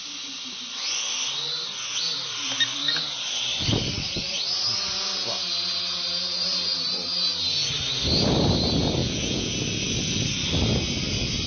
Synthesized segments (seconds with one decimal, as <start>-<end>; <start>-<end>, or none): 9.0-9.5